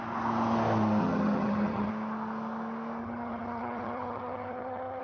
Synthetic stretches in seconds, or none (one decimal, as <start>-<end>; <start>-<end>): 1.0-1.9; 3.0-5.0